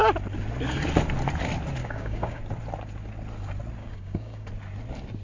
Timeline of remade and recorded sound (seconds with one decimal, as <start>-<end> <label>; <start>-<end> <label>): 0.0-1.8 recorded; 1.8-2.4 remade; 2.4-3.8 recorded; 3.8-4.5 remade; 4.5-5.2 recorded